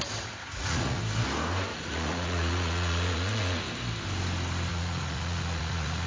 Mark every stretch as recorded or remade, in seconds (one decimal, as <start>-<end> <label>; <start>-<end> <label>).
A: 0.0-0.4 recorded; 0.4-1.0 remade; 1.0-1.7 recorded; 1.7-3.6 remade; 3.6-4.7 recorded; 4.7-6.1 remade